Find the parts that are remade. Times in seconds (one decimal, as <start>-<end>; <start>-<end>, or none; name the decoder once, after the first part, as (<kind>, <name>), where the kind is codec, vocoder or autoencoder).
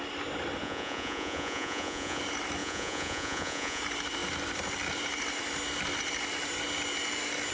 0.6-2.2 (vocoder, Vocos); 2.6-3.8